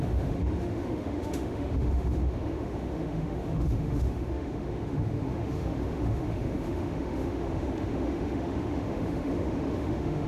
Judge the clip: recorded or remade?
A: remade